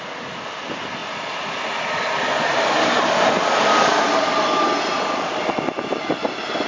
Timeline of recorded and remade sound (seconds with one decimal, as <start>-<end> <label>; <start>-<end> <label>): 0.0-6.7 recorded

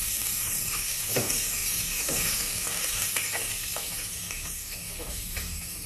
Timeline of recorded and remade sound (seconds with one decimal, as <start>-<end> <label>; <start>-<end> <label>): 0.0-5.9 remade

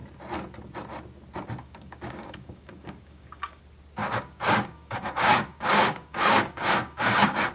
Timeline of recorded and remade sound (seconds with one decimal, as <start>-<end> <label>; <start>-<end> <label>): 0.0-1.6 recorded; 1.6-3.6 remade; 3.6-4.0 recorded; 4.0-7.5 remade

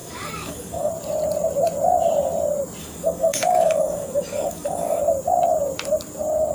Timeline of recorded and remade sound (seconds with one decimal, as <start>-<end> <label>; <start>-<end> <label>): 0.0-0.9 remade; 0.9-2.8 recorded; 2.8-5.0 remade; 5.0-6.5 recorded

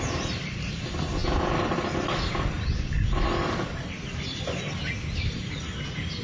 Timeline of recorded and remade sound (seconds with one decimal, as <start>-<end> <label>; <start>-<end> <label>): 0.0-6.2 recorded

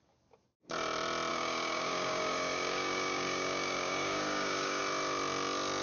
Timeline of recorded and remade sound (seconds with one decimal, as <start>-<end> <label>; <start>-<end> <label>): 0.0-1.3 recorded; 1.3-4.8 remade; 4.8-5.8 recorded